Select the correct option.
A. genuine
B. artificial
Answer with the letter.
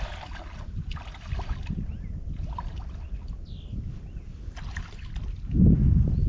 A